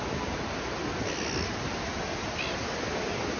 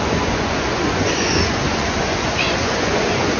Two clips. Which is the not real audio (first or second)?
second